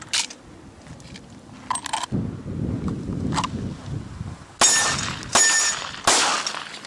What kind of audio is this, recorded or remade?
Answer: recorded